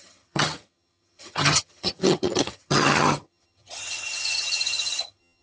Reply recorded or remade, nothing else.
remade